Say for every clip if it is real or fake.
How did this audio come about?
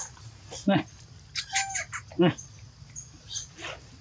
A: real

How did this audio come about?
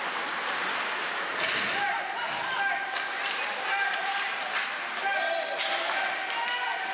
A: real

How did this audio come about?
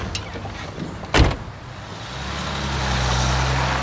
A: real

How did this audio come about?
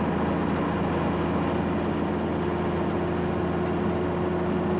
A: real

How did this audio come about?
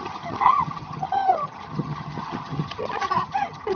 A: fake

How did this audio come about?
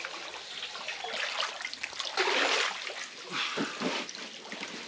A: real